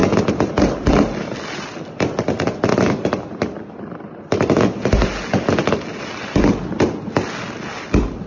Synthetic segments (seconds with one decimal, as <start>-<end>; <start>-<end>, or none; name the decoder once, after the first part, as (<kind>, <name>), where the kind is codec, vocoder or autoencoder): 0.0-1.9 (vocoder, BigVGAN v2); 2.7-4.3